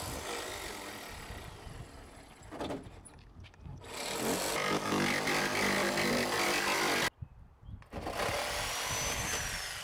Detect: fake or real real